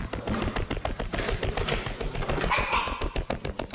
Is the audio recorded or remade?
recorded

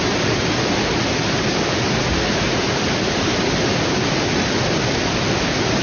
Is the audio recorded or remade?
recorded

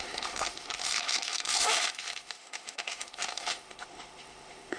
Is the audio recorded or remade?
remade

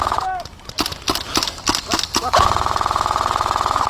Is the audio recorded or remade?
recorded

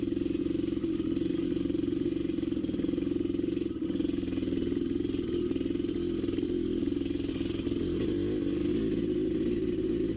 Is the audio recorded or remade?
recorded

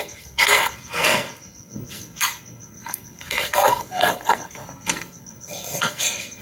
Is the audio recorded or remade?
remade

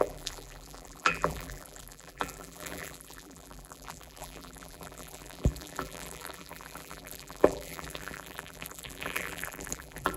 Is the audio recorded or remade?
remade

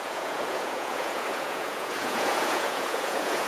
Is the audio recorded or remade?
remade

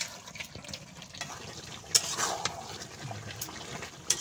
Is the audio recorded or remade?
recorded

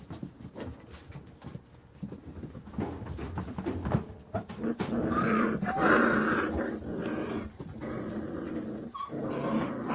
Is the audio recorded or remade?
recorded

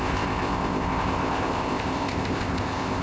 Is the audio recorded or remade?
remade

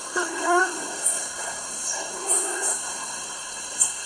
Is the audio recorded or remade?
remade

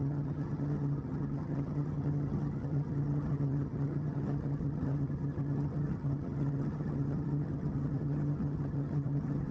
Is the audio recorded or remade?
remade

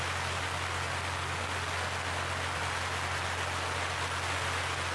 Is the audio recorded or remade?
recorded